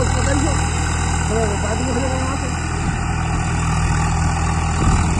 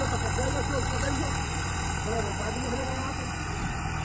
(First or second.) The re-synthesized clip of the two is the second